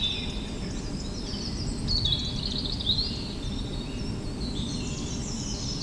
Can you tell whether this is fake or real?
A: real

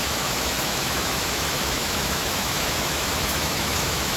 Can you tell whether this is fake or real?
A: fake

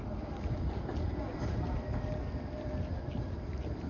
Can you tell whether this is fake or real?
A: real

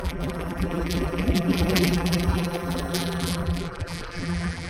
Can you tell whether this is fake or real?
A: fake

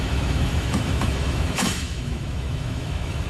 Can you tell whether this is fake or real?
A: fake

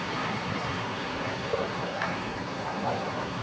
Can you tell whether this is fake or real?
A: fake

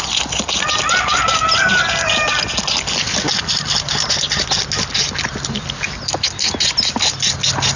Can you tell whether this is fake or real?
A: real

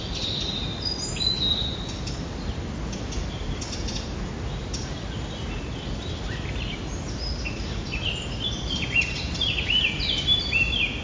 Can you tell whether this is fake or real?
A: real